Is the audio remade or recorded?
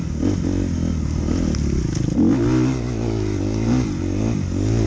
recorded